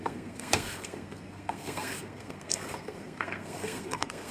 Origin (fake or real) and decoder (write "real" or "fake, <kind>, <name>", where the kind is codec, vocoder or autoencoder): fake, codec, SNAC